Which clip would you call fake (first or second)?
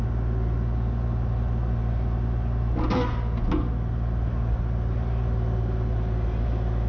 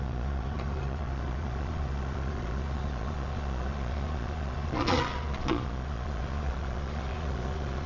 second